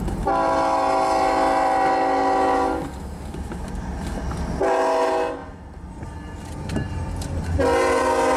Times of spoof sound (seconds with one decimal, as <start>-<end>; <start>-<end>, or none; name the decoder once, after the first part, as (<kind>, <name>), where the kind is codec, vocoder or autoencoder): none